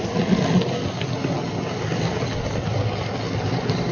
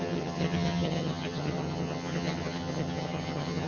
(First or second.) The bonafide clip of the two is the first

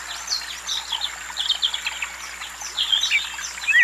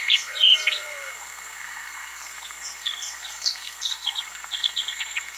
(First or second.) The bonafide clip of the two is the first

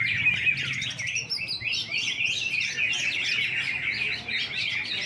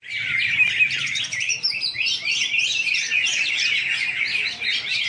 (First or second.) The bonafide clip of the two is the first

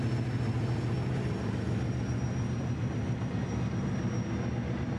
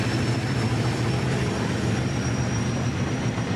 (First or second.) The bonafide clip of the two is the first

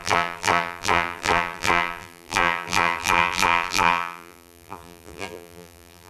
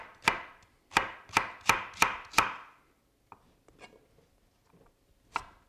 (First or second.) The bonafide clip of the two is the second